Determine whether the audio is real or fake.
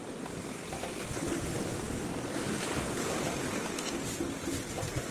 real